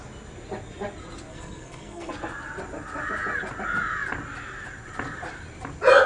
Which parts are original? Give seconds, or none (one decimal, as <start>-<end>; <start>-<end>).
0.0-1.3; 2.1-6.1